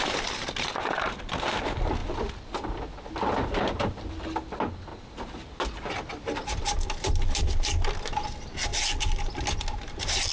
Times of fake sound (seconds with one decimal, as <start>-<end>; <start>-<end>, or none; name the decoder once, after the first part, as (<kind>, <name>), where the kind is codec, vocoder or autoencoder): none